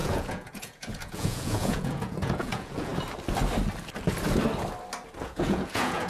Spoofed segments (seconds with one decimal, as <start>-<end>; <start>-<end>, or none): 0.0-2.9; 5.2-6.1